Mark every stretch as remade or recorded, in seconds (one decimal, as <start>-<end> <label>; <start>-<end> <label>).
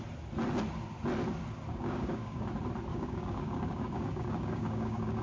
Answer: 0.0-1.7 recorded; 1.7-2.5 remade; 2.5-2.9 recorded; 2.9-5.2 remade